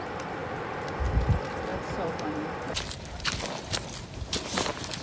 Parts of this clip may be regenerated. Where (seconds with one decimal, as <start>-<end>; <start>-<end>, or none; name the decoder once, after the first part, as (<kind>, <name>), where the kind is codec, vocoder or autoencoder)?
none